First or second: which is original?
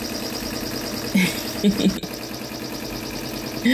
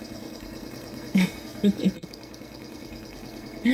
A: first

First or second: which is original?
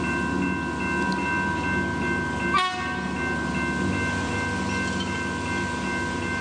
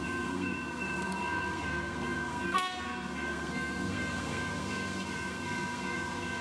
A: first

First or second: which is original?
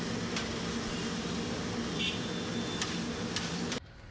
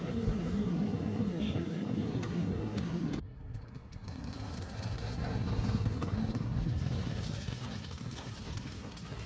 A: first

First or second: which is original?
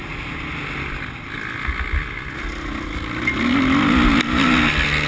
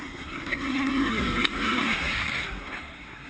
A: first